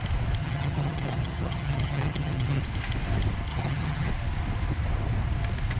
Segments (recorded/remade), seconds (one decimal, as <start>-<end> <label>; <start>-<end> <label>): 0.0-0.4 recorded; 0.4-2.6 remade; 2.6-3.5 recorded; 3.5-4.1 remade; 4.1-5.8 recorded